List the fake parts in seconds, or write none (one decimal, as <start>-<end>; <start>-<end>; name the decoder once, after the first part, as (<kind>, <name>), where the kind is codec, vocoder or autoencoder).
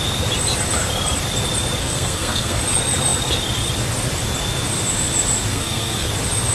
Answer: 1.8-2.6 (codec, SNAC); 5.5-6.1